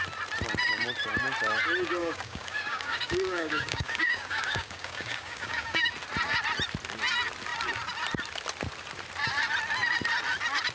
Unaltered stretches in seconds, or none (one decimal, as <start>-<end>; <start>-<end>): 0.0-2.0; 5.9-10.7